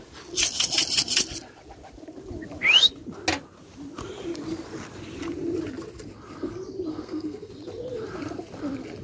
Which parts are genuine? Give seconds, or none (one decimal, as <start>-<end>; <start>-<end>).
0.0-6.9; 7.5-9.0